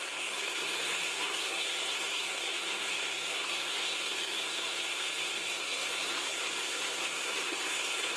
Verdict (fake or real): fake